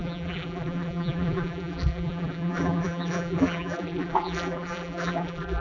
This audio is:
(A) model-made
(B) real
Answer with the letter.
A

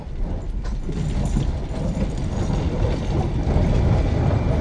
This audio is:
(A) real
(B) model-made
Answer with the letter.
A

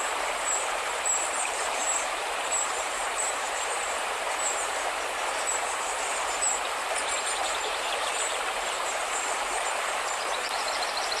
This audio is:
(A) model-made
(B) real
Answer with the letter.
A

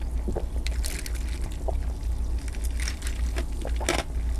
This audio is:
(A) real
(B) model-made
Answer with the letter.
A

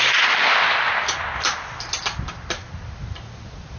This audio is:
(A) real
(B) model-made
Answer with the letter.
A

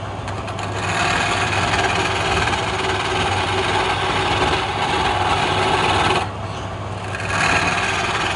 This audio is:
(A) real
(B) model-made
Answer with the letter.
A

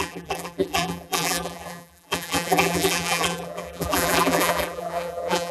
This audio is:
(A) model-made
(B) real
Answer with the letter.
A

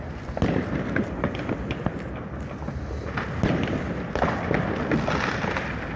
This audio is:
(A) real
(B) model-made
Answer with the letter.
A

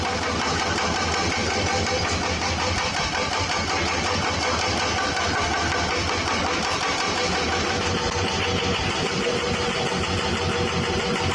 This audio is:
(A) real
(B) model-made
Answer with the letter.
A